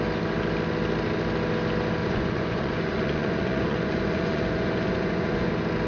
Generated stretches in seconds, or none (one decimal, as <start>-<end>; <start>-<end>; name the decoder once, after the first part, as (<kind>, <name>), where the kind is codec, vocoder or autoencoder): 2.0-5.5 (vocoder, Vocos)